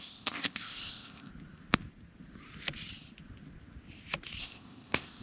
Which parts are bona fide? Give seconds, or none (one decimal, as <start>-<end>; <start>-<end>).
1.3-4.4